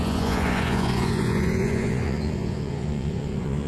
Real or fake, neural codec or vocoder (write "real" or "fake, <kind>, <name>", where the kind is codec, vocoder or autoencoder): fake, vocoder, Vocos